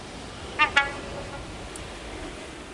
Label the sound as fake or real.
real